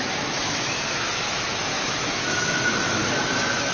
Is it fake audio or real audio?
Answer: fake